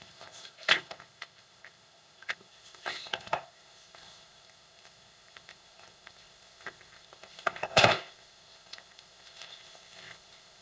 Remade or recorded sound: remade